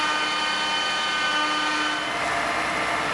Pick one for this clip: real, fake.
real